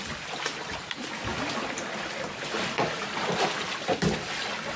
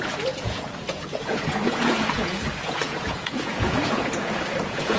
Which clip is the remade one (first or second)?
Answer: second